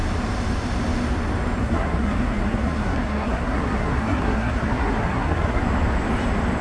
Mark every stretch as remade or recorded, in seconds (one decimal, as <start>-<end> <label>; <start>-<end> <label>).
0.0-1.6 recorded; 1.6-5.6 remade; 5.6-6.6 recorded